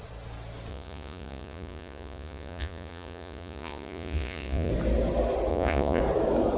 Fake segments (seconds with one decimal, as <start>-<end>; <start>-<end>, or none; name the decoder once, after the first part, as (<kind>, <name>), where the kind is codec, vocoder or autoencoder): 0.7-4.7 (vocoder, Vocos); 5.5-6.0